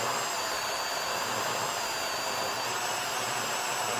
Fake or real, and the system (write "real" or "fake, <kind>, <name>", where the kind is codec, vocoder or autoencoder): real